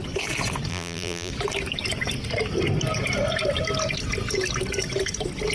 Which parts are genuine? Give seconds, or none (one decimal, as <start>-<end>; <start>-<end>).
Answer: 0.0-0.7; 1.3-5.5